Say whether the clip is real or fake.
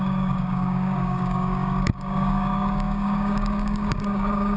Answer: fake